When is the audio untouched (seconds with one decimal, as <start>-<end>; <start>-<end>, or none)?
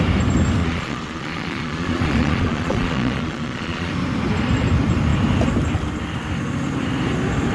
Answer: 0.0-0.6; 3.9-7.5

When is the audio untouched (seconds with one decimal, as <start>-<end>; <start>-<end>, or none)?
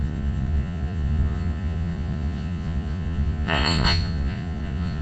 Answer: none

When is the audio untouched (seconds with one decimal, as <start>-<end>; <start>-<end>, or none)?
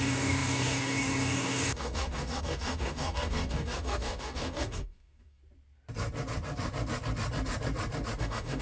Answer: 5.4-8.2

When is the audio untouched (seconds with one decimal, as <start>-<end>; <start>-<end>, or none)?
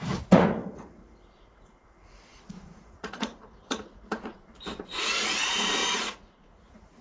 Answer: 4.3-5.0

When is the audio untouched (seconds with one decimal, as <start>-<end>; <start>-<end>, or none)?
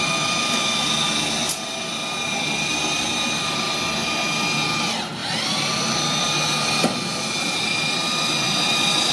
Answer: 0.0-9.1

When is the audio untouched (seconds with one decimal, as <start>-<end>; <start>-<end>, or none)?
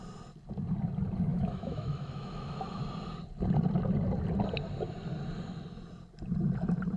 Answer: 0.0-1.3; 2.8-7.0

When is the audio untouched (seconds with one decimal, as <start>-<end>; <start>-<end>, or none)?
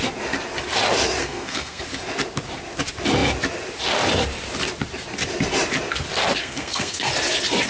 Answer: 0.0-1.2; 1.8-6.4; 7.1-7.7